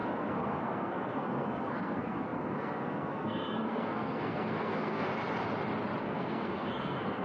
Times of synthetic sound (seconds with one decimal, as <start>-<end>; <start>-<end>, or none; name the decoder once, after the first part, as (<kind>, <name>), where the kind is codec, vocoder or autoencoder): 0.0-5.1 (codec, SNAC); 6.0-7.2

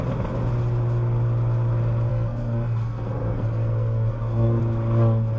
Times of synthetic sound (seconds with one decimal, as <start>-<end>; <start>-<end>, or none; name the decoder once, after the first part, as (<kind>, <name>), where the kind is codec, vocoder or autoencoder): 2.1-4.6 (codec, SNAC)

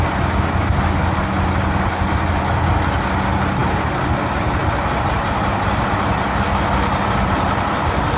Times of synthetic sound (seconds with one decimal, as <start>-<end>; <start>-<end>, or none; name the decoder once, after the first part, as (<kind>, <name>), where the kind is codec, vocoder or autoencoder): none

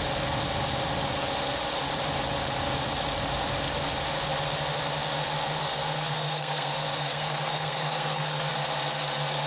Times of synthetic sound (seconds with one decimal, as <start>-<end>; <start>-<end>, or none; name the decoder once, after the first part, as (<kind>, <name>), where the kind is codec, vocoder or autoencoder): 5.6-8.5 (codec, SNAC)

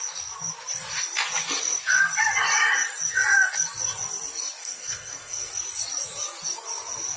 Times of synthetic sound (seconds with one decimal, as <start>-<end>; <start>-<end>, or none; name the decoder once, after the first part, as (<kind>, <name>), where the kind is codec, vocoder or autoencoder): 4.6-5.5 (codec, SNAC)

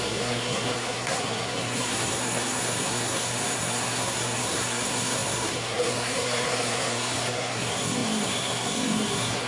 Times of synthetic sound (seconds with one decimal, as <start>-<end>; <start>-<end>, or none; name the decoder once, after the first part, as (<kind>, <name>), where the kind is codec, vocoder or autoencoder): 0.0-9.5 (codec, SNAC)

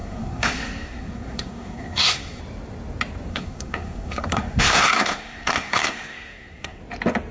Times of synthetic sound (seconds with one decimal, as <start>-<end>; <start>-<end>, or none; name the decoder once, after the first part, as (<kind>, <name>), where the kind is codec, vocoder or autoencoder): 0.0-2.4 (codec, SNAC); 3.3-6.8